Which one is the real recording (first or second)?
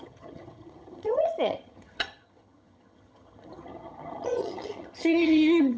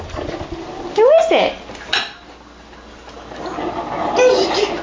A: second